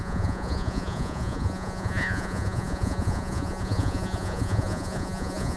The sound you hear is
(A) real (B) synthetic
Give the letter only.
B